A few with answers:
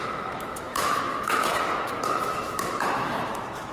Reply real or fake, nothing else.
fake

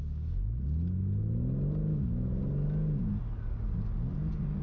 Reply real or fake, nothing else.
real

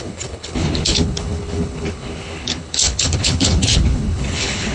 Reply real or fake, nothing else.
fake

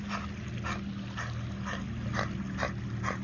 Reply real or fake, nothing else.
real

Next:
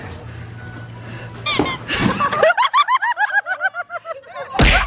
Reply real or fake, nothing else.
real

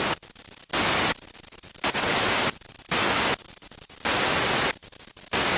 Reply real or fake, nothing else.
real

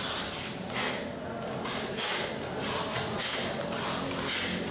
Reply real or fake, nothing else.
real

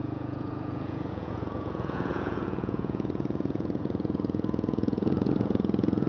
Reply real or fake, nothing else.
fake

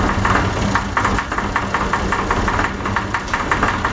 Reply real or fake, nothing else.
real